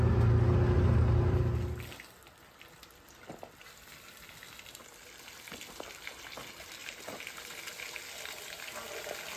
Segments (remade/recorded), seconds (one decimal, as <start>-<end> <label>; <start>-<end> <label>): 0.0-9.4 recorded